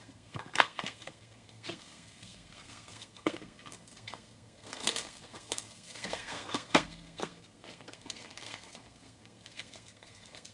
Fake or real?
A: fake